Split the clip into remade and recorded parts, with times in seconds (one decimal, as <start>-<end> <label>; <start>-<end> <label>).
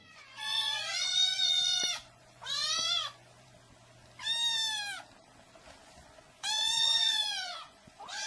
0.0-3.5 remade; 3.5-5.8 recorded; 5.8-8.3 remade